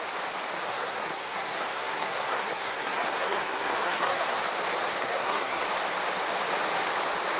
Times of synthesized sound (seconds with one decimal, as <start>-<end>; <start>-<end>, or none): 0.7-4.4; 5.0-5.6

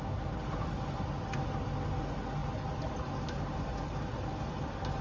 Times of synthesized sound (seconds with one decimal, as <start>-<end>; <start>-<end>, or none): none

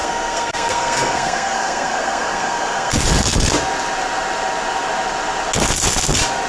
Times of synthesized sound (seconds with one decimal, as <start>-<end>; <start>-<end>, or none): 0.0-2.9

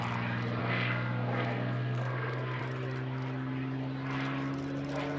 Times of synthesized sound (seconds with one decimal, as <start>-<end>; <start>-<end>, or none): 0.6-2.6

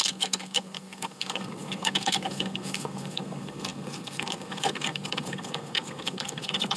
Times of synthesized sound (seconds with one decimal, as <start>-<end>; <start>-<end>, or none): 0.0-6.8

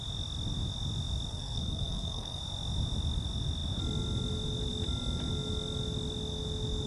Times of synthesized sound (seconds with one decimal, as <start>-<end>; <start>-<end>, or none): 1.3-2.4

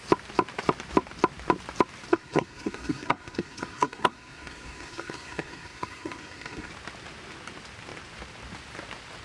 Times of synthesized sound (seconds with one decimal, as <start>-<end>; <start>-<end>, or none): 2.1-6.7